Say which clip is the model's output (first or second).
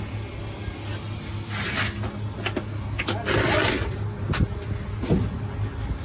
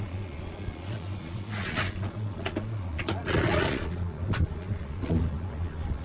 second